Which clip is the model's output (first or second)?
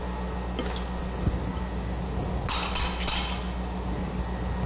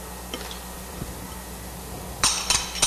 second